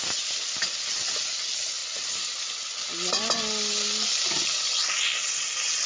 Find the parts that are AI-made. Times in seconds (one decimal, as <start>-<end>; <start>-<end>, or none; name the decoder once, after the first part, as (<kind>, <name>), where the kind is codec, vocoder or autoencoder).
none